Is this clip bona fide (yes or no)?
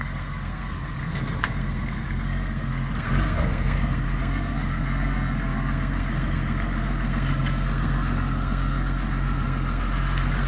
no